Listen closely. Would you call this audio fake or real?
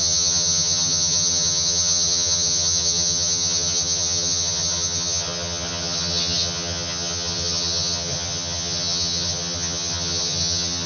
fake